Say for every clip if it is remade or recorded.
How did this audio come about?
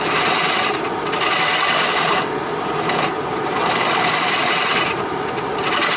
recorded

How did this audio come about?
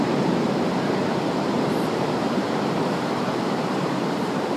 remade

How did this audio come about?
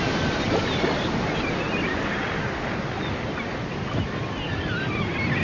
recorded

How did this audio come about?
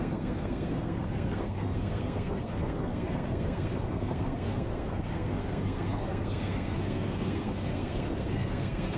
remade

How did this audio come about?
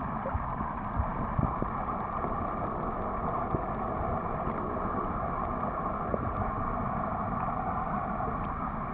recorded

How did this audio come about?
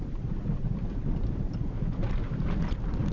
recorded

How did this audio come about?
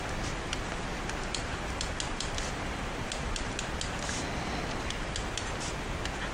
recorded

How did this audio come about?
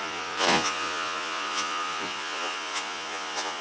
remade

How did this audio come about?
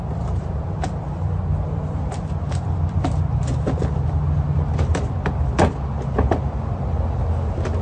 remade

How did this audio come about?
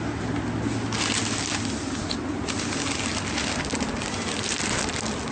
recorded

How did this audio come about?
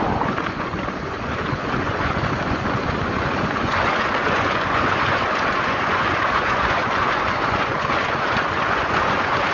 remade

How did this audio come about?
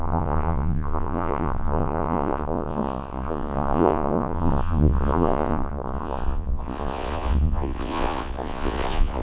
remade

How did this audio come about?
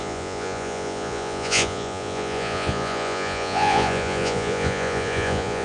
remade